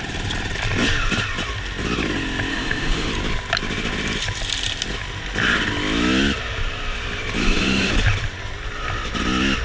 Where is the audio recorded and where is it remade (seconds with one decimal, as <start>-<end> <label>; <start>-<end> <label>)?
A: 0.0-2.5 recorded; 2.5-3.1 remade; 3.1-7.4 recorded; 7.4-7.9 remade; 7.9-9.6 recorded